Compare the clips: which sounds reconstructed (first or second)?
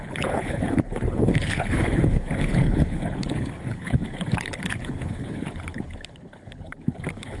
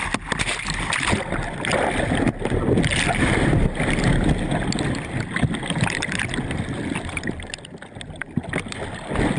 first